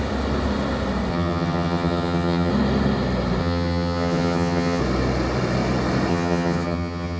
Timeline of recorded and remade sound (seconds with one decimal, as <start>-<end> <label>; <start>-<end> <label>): 0.0-1.1 recorded; 1.1-2.5 remade; 2.5-3.4 recorded; 3.4-4.8 remade; 4.8-6.1 recorded; 6.1-7.2 remade